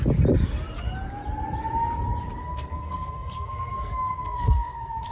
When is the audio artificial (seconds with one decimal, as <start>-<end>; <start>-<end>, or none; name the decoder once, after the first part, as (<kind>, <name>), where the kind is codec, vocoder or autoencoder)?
2.4-5.1 (codec, SNAC)